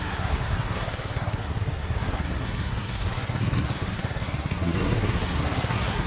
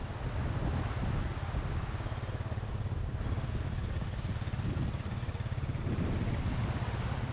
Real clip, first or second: second